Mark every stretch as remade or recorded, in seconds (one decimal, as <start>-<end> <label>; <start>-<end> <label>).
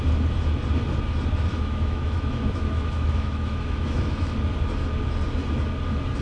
0.0-1.5 recorded; 1.5-4.4 remade; 4.4-6.2 recorded